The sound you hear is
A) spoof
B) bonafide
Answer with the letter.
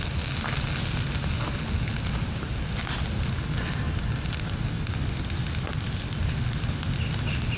B